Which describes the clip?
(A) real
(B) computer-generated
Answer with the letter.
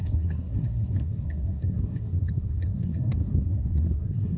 B